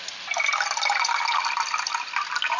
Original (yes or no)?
yes